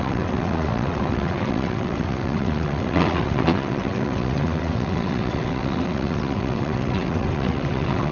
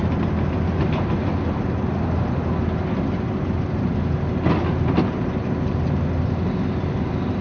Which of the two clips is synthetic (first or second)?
first